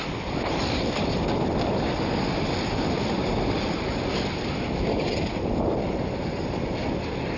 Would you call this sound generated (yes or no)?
no